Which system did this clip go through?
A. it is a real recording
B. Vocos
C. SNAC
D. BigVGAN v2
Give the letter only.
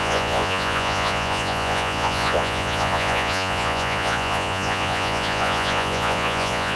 B